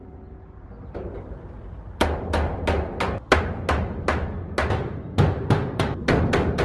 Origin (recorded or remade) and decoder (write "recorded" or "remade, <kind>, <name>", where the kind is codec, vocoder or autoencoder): recorded